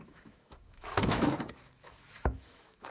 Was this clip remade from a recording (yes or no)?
yes